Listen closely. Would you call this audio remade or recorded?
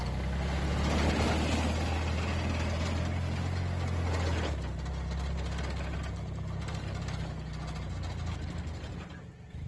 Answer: recorded